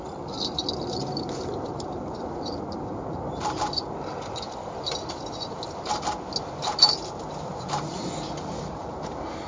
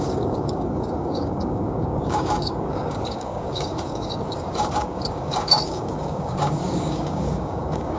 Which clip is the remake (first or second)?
second